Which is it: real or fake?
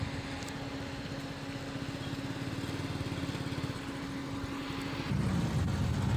real